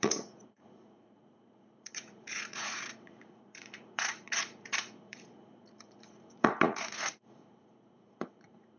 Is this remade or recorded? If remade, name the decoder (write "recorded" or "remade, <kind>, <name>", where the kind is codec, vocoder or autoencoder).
remade, vocoder, Vocos